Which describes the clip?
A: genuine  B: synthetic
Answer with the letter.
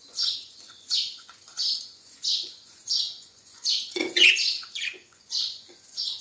B